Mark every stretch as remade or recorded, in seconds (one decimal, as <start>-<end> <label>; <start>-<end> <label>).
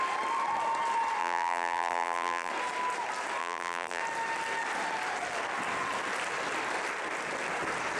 0.0-1.2 recorded; 1.2-2.5 remade; 2.5-3.4 recorded; 3.4-4.0 remade; 4.0-8.0 recorded